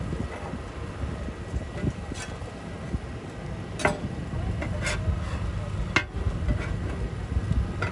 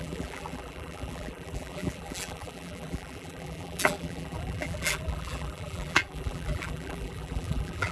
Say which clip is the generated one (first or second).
second